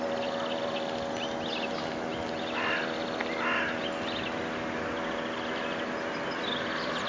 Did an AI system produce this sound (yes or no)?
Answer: no